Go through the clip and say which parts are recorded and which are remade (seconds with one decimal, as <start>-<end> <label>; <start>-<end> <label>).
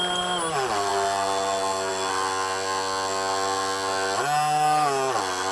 0.0-5.5 recorded